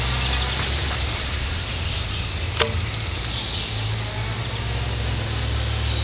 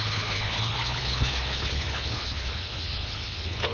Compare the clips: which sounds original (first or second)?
first